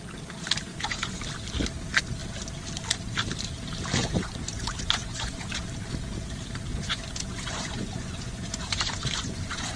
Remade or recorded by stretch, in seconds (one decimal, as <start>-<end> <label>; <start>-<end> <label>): 0.0-0.7 recorded; 0.7-1.2 remade; 1.2-4.0 recorded; 4.0-5.6 remade; 5.6-6.7 recorded; 6.7-9.8 remade